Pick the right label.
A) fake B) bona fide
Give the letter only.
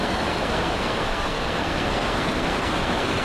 A